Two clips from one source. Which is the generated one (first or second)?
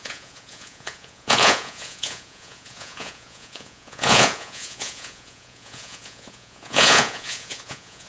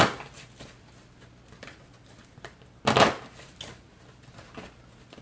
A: first